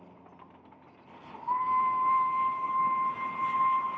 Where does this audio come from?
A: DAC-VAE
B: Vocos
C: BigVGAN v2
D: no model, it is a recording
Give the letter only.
D